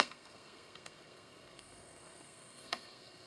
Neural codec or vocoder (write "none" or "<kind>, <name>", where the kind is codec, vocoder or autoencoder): codec, SNAC